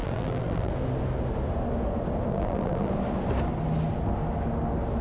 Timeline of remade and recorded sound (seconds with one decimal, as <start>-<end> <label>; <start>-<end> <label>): 0.0-0.7 remade; 0.7-2.3 recorded; 2.3-2.9 remade; 2.9-5.0 recorded